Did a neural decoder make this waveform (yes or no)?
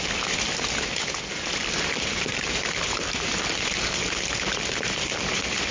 no